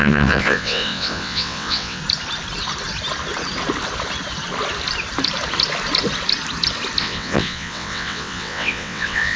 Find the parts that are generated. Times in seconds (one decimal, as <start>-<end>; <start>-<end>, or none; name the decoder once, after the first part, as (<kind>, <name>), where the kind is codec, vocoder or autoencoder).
0.0-2.0 (vocoder, WaveNeXt); 7.0-9.4